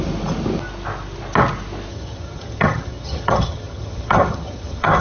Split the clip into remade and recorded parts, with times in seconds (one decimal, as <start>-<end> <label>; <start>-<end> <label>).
0.0-1.9 recorded; 1.9-5.0 remade